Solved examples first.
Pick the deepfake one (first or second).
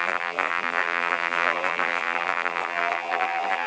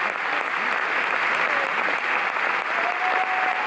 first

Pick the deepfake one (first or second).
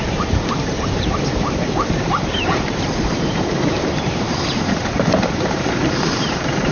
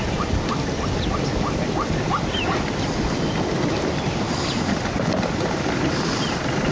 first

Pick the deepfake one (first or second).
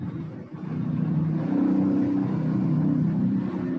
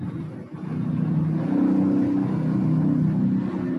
first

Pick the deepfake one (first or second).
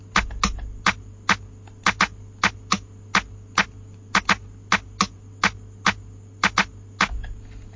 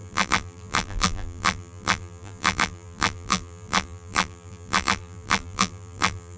second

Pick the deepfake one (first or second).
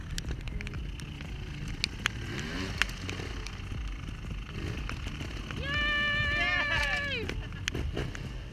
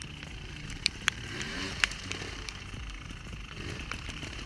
second